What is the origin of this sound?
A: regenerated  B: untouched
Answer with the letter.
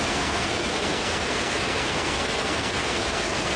A